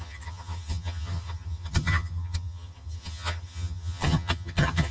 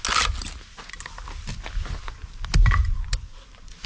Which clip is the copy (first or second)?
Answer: first